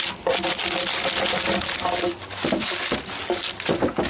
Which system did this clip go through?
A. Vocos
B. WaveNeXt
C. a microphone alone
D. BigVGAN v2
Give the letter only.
C